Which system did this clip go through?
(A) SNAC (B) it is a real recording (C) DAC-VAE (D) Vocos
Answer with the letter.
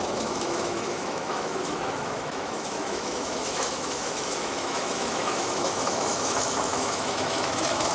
C